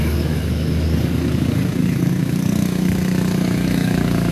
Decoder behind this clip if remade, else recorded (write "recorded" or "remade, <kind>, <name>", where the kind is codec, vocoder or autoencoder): remade, codec, DAC